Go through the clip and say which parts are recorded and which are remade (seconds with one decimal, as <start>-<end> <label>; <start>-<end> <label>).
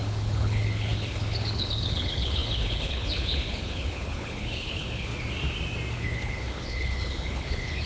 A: 0.0-5.1 remade; 5.1-5.9 recorded; 5.9-7.9 remade